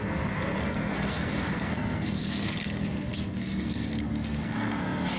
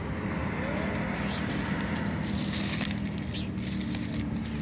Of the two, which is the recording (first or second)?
second